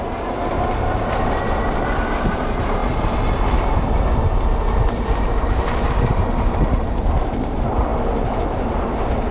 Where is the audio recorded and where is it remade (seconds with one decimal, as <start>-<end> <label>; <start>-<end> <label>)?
0.0-2.8 remade; 2.8-4.8 recorded; 4.8-7.9 remade; 7.9-9.3 recorded